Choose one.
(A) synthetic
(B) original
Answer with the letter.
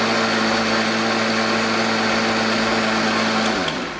B